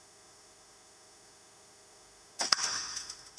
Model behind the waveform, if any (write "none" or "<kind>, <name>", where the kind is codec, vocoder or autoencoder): autoencoder, DAC-VAE